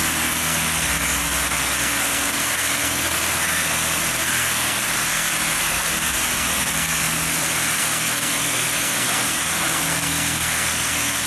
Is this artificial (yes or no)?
yes